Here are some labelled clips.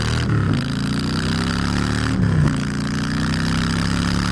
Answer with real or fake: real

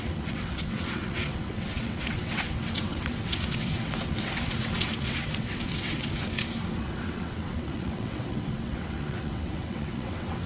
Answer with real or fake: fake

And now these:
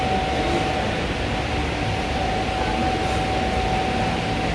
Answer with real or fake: real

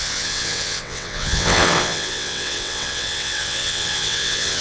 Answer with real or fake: fake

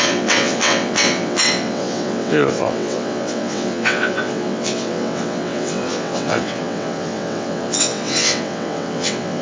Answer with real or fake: fake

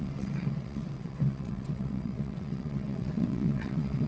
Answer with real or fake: fake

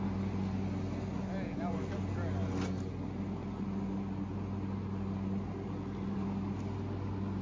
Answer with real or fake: real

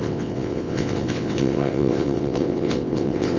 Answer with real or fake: fake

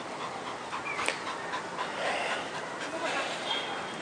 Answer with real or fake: real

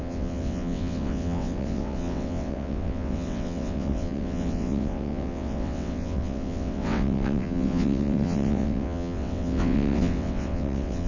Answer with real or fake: fake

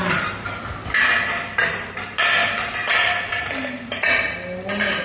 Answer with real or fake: real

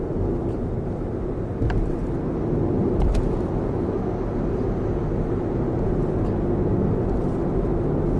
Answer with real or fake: real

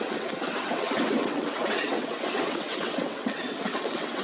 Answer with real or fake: fake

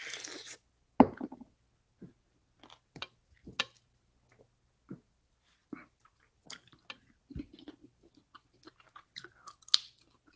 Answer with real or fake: real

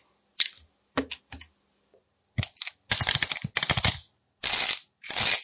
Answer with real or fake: real